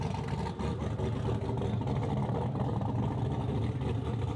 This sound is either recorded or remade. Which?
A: recorded